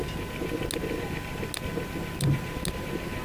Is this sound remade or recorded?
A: recorded